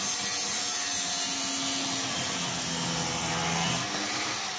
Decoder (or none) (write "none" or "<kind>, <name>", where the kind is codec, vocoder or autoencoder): none